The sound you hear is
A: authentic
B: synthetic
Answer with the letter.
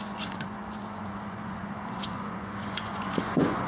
B